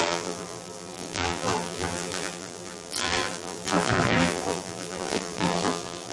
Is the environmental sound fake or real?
fake